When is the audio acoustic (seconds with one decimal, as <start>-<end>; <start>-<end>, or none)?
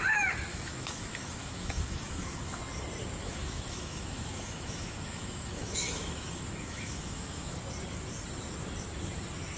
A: 0.0-0.5; 2.6-3.2; 7.6-9.6